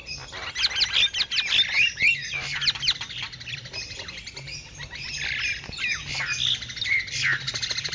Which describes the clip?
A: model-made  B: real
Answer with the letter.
B